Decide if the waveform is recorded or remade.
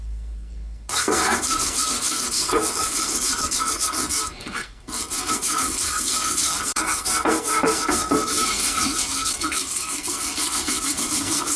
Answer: remade